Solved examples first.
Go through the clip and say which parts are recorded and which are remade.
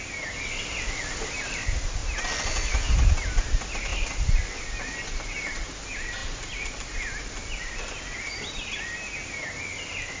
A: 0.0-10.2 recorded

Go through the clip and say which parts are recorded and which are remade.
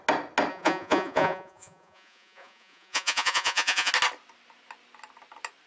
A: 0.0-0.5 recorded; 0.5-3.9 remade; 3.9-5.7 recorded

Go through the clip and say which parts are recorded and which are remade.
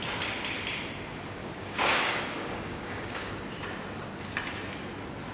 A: 0.0-1.4 recorded; 1.4-3.3 remade; 3.3-5.3 recorded